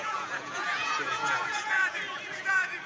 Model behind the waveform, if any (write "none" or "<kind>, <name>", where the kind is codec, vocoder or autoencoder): vocoder, Vocos